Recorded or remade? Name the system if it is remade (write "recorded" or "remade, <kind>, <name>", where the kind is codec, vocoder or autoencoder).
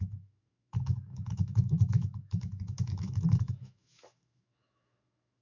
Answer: remade, autoencoder, DAC-VAE